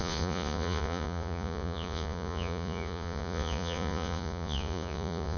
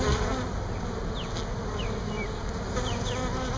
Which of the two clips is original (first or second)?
second